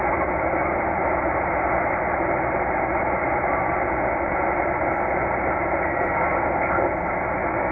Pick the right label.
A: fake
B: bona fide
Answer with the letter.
B